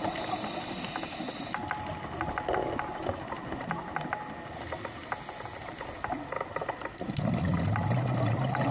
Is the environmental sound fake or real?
real